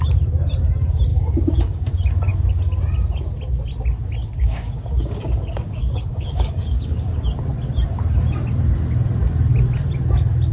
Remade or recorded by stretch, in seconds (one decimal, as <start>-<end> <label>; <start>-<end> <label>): 0.0-1.1 recorded; 1.1-1.9 remade; 1.9-4.2 recorded; 4.2-7.1 remade; 7.1-10.5 recorded